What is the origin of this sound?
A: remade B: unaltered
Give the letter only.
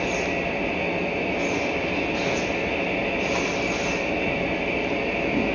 B